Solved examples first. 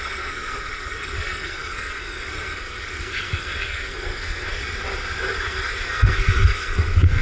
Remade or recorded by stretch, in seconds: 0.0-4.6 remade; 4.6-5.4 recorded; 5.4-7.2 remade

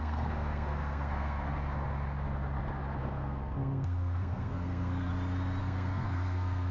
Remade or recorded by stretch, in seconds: 0.0-1.5 remade; 1.5-3.0 recorded; 3.0-5.1 remade; 5.1-5.6 recorded; 5.6-6.7 remade

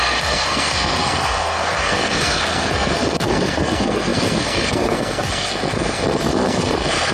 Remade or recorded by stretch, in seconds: 0.0-7.1 remade

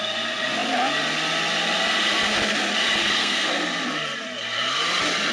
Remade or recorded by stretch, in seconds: 0.0-3.0 recorded; 3.0-3.5 remade; 3.5-5.3 recorded

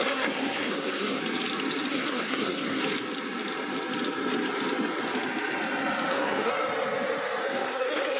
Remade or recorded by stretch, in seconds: 0.0-1.2 remade; 1.2-1.9 recorded; 1.9-2.8 remade; 2.8-6.1 recorded; 6.1-6.5 remade; 6.5-7.4 recorded; 7.4-8.2 remade

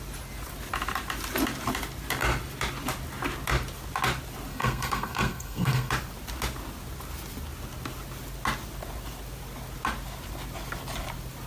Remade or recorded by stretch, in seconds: 0.0-4.5 recorded; 4.5-5.9 remade; 5.9-11.5 recorded